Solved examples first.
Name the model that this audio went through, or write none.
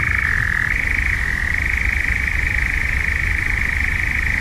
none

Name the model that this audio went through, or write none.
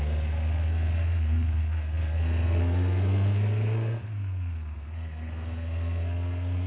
codec, SNAC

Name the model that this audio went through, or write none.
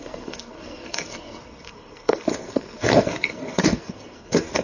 codec, SNAC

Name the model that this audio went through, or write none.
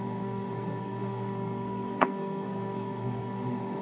codec, SNAC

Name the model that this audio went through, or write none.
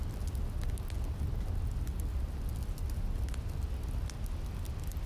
none